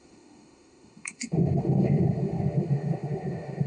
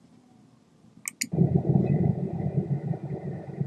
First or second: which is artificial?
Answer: first